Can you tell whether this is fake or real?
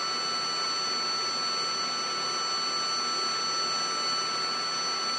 real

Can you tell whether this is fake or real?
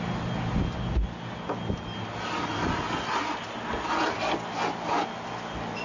real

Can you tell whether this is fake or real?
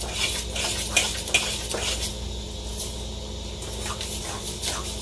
real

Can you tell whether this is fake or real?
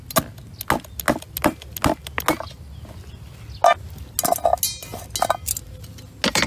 real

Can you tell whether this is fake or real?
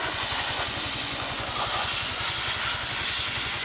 fake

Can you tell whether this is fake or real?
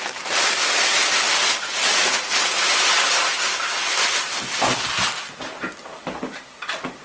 real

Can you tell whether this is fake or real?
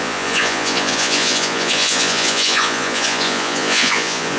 fake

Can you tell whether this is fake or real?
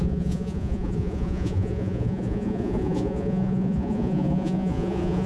fake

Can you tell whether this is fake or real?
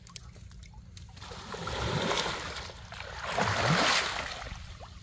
real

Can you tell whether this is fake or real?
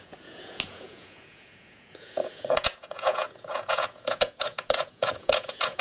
fake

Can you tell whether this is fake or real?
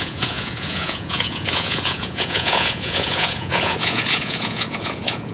fake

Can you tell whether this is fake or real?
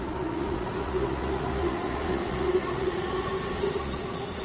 fake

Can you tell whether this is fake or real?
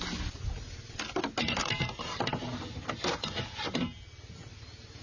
real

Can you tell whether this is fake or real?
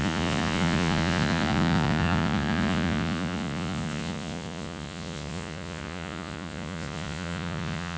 fake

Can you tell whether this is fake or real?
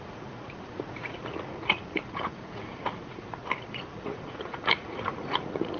fake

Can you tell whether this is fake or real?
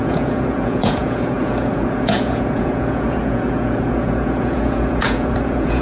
fake